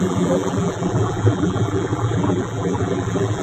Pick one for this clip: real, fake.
fake